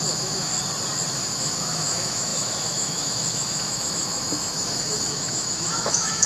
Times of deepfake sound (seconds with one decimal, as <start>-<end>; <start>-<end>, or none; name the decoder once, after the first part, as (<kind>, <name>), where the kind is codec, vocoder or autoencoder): 0.0-0.5 (autoencoder, DAC-VAE); 1.2-6.3